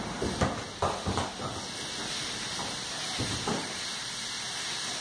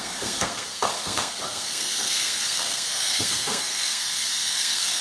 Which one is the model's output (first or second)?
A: second